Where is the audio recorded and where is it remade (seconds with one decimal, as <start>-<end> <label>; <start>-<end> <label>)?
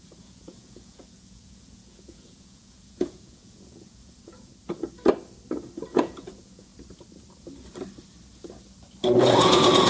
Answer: 0.0-4.5 remade; 4.5-5.9 recorded; 5.9-6.7 remade; 6.7-9.2 recorded; 9.2-9.9 remade